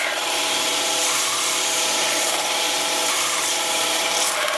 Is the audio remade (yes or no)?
yes